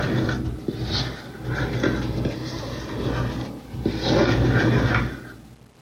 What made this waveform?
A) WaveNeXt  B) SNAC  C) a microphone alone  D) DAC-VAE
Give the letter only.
C